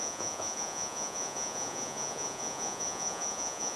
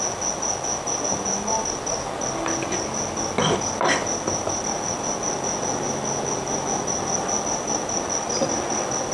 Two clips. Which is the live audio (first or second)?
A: second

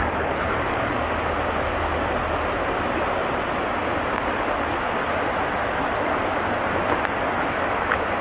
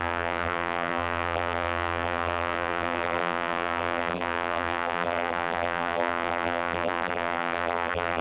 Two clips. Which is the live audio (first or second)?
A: first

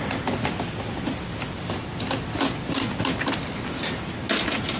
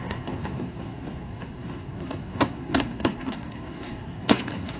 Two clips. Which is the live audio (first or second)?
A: first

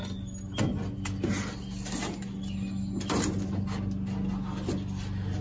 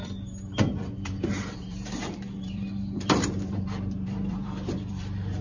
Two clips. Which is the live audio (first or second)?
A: first